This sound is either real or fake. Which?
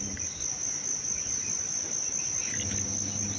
real